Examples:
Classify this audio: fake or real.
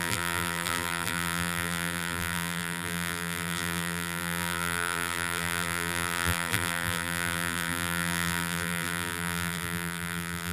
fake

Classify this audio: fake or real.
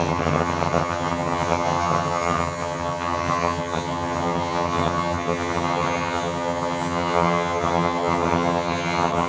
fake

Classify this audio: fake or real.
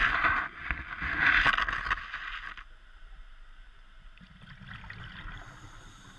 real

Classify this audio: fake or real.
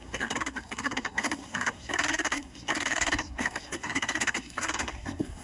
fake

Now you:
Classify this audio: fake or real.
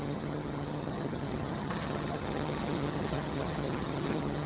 fake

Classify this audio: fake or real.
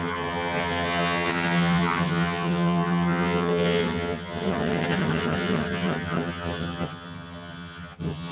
fake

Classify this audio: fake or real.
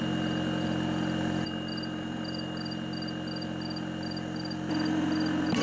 real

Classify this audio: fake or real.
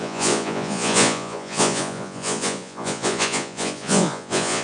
fake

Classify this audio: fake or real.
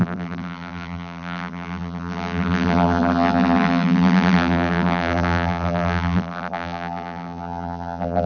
fake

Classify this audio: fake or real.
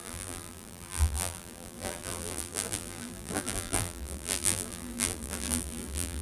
fake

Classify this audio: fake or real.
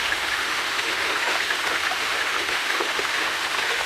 fake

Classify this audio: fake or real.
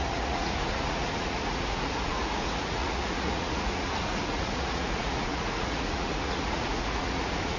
fake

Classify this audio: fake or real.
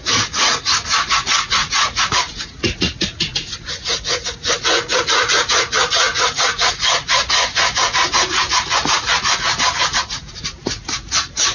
fake